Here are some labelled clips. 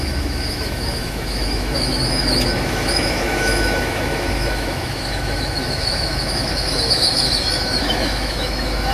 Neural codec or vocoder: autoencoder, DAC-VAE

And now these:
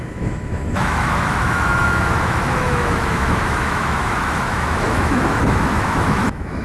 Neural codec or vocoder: autoencoder, DAC-VAE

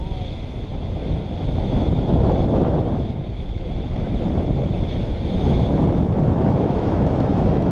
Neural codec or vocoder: autoencoder, DAC-VAE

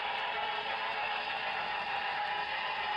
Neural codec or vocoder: none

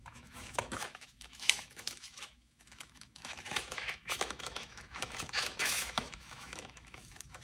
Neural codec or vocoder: autoencoder, DAC-VAE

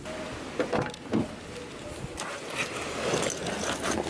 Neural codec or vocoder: none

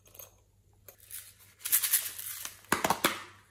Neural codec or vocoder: none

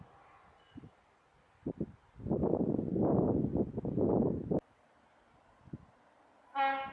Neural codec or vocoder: none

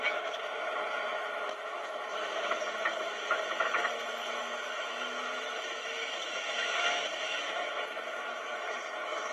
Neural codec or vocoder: autoencoder, DAC-VAE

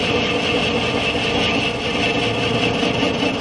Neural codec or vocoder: none